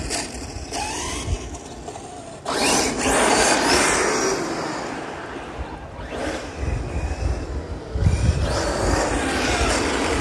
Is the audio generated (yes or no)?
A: no